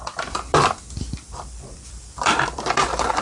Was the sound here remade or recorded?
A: remade